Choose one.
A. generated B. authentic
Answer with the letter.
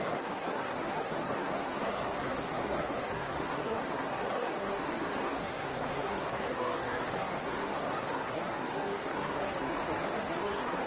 A